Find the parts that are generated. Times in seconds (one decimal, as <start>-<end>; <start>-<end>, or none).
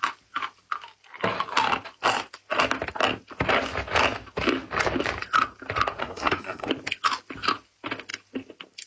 6.0-6.7